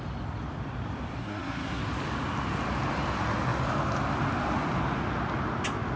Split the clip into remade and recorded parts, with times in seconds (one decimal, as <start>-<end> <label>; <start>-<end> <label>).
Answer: 0.0-1.2 recorded; 1.2-1.8 remade; 1.8-6.0 recorded